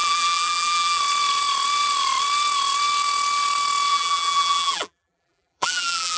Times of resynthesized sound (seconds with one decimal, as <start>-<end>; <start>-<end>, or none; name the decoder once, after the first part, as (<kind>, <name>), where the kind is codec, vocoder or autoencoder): 0.0-1.0 (vocoder, BigVGAN v2); 3.9-6.2